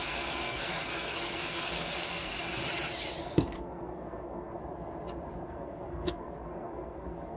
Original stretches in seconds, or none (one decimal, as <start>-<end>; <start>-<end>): 2.6-3.2; 4.6-5.4